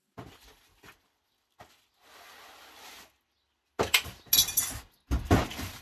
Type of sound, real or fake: real